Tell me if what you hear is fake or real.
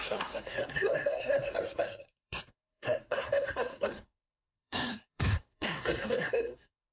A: fake